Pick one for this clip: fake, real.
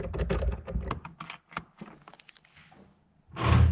real